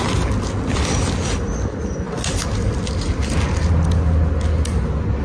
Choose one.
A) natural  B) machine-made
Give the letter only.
A